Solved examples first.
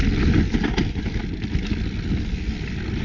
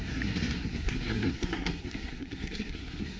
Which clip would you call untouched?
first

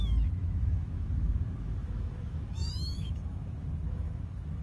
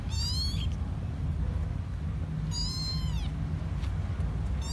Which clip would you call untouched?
second